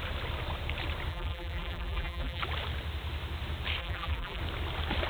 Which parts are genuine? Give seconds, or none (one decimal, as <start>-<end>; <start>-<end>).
0.0-1.1; 2.4-3.8; 4.4-5.1